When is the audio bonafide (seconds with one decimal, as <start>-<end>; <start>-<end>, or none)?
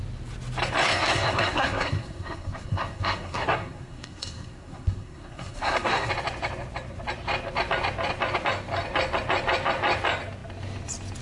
0.0-0.8; 6.1-11.2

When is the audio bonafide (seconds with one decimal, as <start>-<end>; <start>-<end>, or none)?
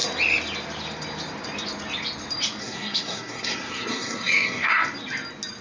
0.0-2.6; 4.8-5.6